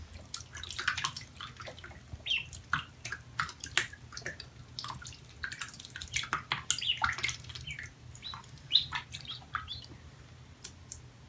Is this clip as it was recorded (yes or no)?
yes